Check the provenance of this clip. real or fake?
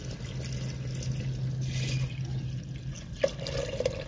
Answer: real